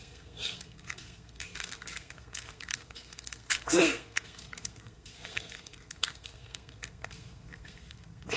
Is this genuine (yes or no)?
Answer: no